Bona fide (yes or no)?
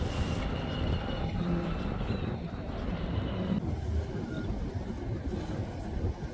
yes